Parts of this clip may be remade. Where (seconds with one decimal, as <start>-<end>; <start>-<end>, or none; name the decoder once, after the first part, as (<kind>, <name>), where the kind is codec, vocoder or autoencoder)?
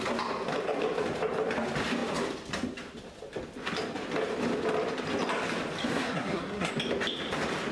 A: 5.9-6.7 (codec, SNAC)